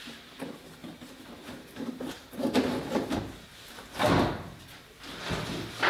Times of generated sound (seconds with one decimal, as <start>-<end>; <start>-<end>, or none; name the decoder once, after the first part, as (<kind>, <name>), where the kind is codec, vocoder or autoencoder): none